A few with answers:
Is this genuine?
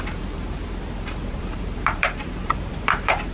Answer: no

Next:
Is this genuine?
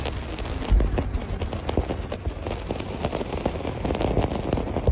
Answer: yes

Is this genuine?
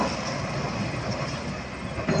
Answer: yes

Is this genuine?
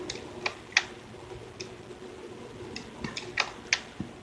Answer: yes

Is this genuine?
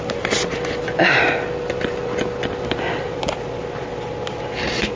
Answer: yes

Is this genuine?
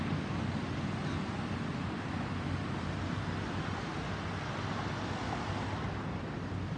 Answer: yes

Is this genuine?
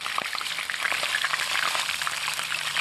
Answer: no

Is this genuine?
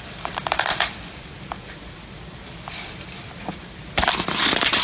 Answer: no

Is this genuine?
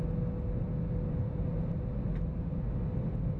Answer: yes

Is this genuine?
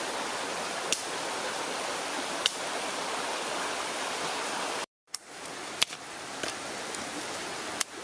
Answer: no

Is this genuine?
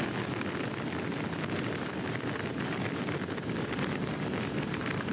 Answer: yes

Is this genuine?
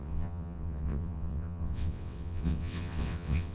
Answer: no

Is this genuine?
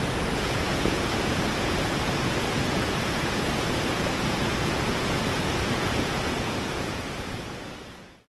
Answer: no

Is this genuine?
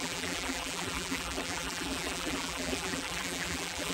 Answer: no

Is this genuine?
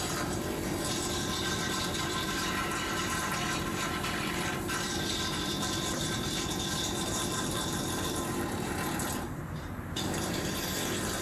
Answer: no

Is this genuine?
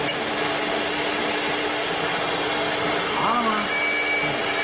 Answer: yes